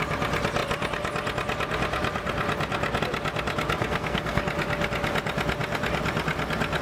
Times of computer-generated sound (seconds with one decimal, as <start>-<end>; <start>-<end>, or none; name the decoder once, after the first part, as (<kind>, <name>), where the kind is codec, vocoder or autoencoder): 3.8-4.4 (codec, SNAC)